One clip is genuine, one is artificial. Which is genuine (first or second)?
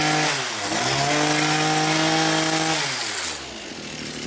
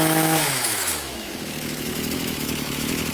first